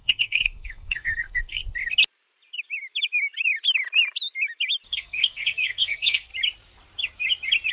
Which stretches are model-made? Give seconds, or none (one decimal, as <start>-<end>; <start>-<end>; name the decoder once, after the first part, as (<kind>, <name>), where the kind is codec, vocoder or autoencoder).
0.0-1.6 (codec, SNAC); 4.9-6.3